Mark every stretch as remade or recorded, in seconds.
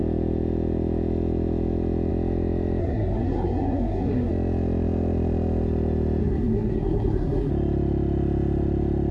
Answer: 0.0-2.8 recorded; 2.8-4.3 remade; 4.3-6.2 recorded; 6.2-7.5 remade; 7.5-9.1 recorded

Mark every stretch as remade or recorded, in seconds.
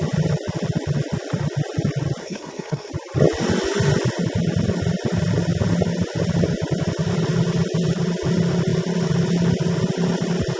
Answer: 0.0-2.2 recorded; 2.2-2.9 remade; 2.9-10.6 recorded